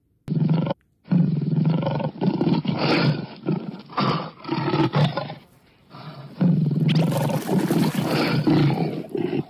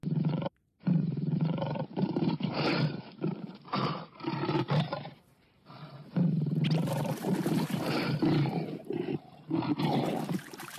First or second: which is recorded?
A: first